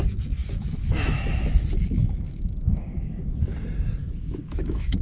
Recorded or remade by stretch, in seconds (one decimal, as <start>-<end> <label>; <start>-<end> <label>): 0.0-0.4 recorded; 0.4-3.4 remade; 3.4-4.0 recorded; 4.0-5.0 remade

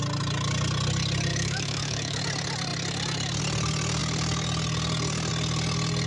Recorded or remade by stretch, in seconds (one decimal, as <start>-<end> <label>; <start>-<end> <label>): 0.0-1.3 recorded; 1.3-2.2 remade; 2.2-6.1 recorded